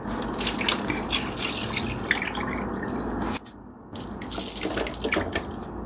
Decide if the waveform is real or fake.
real